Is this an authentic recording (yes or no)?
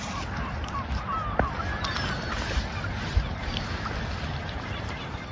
yes